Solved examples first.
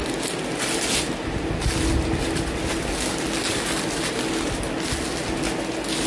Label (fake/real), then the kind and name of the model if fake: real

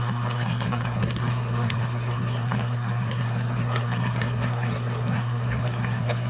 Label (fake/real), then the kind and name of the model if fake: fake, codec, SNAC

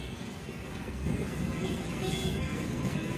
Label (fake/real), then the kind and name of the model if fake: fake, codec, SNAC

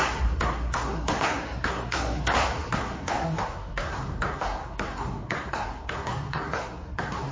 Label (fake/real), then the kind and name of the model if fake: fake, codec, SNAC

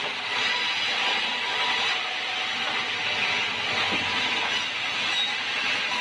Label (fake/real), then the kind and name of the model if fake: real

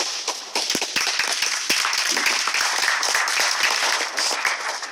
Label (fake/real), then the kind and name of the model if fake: real